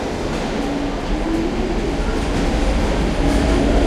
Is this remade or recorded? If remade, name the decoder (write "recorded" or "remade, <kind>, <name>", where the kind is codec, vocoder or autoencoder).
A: recorded